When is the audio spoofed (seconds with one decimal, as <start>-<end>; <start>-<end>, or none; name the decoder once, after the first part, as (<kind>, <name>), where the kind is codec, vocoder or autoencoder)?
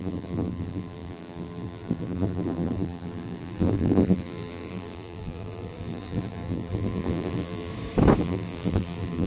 0.0-7.7 (vocoder, BigVGAN v2); 8.2-9.3